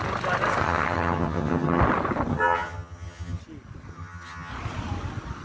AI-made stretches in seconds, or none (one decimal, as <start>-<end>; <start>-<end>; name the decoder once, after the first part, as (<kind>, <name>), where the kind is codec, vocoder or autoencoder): 0.6-1.8 (vocoder, HiFi-GAN); 2.3-3.4; 3.9-4.5